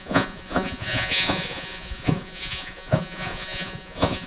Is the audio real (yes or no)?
no